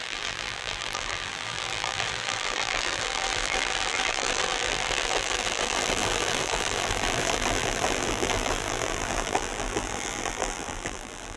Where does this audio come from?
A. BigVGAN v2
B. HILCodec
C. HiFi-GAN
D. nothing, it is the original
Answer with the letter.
A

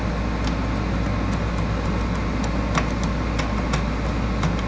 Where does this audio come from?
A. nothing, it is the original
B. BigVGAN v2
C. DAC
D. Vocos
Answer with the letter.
A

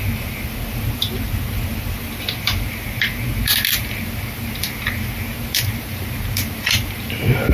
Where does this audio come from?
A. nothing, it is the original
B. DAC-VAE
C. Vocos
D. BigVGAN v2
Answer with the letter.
D